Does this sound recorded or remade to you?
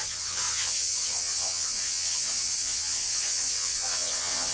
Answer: remade